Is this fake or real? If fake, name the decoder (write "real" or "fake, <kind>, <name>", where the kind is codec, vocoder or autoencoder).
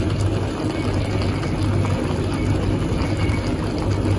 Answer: real